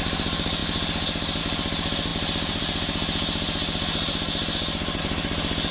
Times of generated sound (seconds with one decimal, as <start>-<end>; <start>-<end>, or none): none